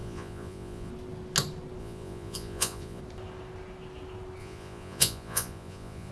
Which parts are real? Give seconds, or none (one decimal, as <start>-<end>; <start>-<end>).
0.9-1.8; 3.0-4.4